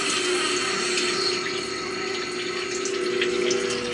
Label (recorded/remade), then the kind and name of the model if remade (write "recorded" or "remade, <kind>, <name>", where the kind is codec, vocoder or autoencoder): recorded